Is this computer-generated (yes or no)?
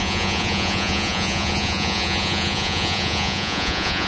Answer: yes